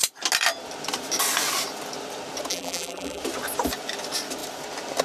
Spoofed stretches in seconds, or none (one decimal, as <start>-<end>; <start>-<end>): 2.5-3.2